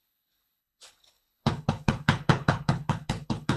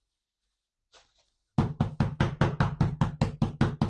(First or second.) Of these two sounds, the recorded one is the second